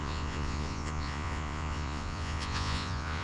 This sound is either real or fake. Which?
fake